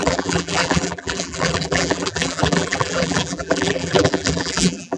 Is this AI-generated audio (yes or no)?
yes